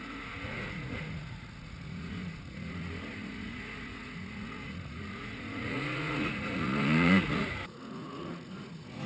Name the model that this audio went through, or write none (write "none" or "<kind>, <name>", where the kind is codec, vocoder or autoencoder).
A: vocoder, Vocos